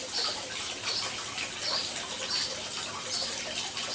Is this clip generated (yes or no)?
no